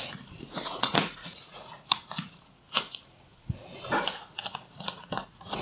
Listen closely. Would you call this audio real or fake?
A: fake